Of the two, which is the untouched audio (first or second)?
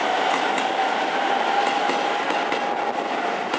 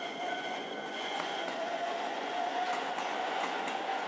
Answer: first